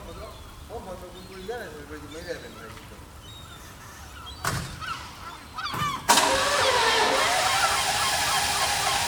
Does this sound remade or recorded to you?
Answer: recorded